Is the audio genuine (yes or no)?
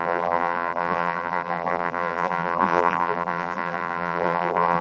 no